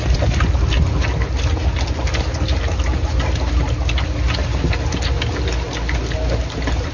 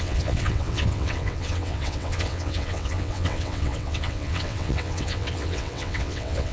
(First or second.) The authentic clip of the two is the first